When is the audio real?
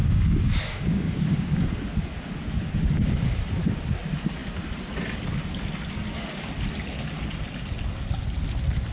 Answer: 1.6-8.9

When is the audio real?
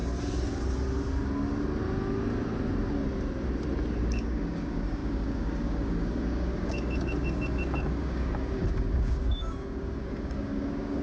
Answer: 0.0-4.0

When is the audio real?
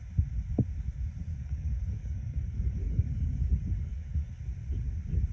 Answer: 0.0-1.3; 4.3-5.3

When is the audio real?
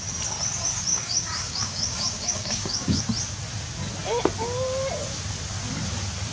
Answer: 0.0-0.9; 3.0-6.3